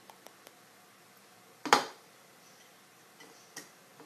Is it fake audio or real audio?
real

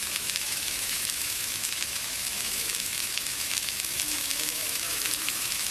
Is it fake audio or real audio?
fake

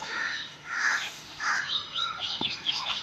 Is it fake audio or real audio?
fake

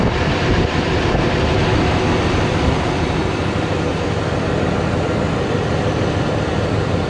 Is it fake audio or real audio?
fake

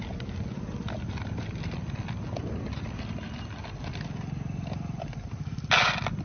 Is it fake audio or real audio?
real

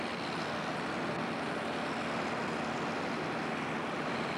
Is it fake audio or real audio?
real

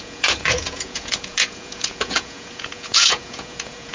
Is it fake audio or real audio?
fake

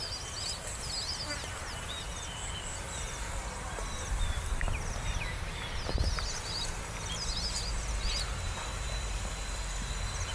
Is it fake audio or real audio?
real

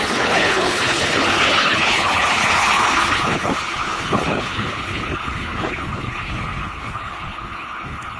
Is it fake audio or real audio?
fake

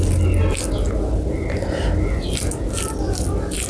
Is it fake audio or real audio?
real